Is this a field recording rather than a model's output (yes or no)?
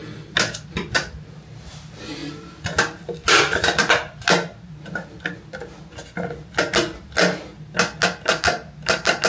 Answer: yes